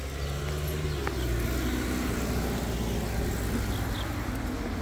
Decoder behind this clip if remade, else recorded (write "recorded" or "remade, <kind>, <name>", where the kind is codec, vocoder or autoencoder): recorded